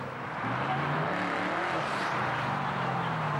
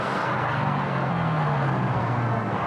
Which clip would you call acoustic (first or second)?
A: first